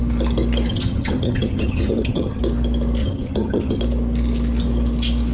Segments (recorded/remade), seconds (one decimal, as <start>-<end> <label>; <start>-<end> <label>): 0.0-0.7 recorded; 0.7-2.4 remade; 2.4-3.0 recorded; 3.0-3.8 remade; 3.8-5.3 recorded